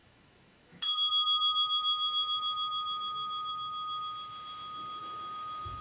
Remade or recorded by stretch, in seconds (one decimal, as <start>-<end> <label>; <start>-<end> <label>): 0.0-3.5 remade; 3.5-5.0 recorded; 5.0-5.8 remade